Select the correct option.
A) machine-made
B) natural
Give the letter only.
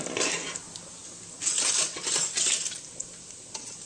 B